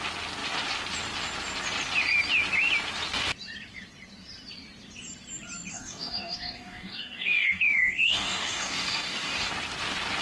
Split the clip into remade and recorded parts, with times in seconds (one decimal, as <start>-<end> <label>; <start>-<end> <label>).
0.0-5.7 recorded; 5.7-9.5 remade; 9.5-10.2 recorded

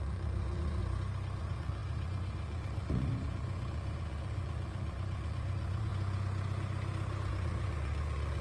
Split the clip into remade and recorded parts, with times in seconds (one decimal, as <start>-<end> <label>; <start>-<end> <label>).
0.0-0.8 remade; 0.8-1.4 recorded; 1.4-5.9 remade; 5.9-7.3 recorded; 7.3-8.4 remade

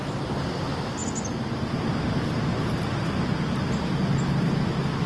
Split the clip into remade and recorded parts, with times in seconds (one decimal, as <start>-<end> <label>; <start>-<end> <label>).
0.0-5.1 recorded

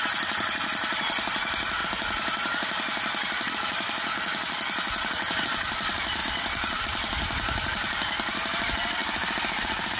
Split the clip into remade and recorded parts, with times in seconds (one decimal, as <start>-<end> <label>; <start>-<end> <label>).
0.0-1.8 remade; 1.8-3.5 recorded; 3.5-4.1 remade; 4.1-5.4 recorded; 5.4-6.2 remade; 6.2-6.8 recorded; 6.8-9.0 remade; 9.0-9.6 recorded; 9.6-10.0 remade

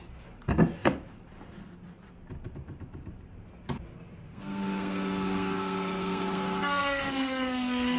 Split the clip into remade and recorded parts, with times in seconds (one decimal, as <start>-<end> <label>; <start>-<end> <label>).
0.0-4.3 recorded; 4.3-8.0 remade